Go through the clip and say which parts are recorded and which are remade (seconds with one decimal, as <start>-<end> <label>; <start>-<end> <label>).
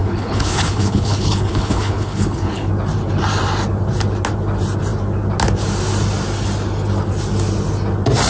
0.0-2.7 remade; 2.7-8.3 recorded